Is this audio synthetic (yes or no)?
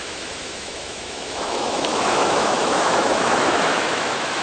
yes